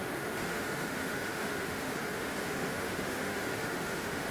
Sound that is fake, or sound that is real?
fake